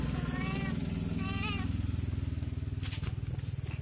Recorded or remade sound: recorded